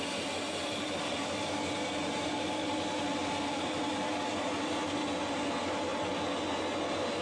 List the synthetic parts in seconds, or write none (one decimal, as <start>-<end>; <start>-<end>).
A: none